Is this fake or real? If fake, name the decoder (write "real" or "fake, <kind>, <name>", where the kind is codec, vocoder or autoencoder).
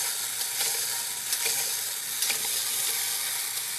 real